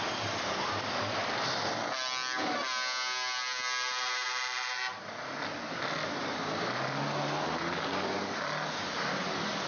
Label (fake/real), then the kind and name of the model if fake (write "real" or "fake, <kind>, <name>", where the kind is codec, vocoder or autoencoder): real